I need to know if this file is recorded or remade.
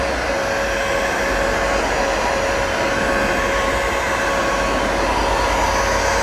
recorded